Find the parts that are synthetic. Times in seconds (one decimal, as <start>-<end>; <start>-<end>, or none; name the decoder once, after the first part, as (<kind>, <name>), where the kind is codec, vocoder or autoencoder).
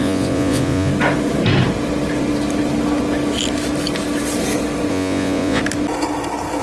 0.0-0.9 (vocoder, Vocos); 4.9-5.6